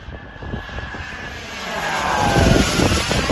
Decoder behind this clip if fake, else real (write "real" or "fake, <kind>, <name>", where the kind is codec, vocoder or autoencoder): real